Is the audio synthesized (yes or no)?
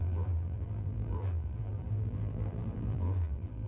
yes